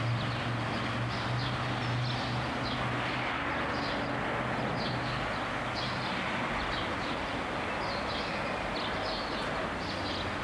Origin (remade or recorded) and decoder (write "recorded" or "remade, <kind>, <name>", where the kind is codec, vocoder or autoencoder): recorded